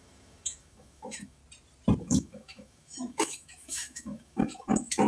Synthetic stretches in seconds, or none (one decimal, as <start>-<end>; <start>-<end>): 0.0-1.4; 2.0-5.1